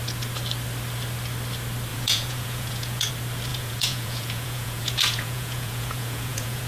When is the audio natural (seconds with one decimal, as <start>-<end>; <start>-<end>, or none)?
0.0-1.9; 3.1-3.5